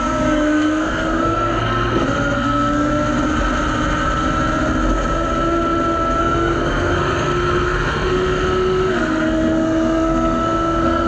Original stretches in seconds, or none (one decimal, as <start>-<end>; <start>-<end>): 2.9-6.2